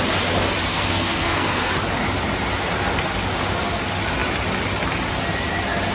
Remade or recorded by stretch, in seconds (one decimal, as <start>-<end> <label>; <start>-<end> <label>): 0.0-0.7 recorded; 0.7-1.7 remade; 1.7-5.9 recorded